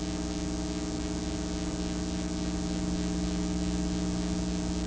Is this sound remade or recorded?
recorded